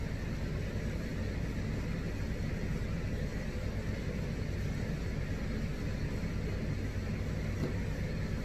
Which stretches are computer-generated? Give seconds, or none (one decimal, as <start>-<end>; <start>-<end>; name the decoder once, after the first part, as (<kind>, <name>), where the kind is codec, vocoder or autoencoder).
none